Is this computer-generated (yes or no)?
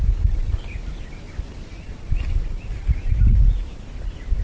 no